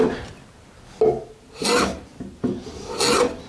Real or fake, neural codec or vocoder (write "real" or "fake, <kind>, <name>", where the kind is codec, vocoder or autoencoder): real